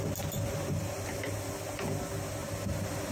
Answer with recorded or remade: recorded